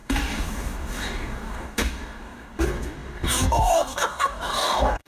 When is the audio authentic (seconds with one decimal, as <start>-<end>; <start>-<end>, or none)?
none